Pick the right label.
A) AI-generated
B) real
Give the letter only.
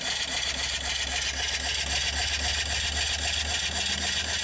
B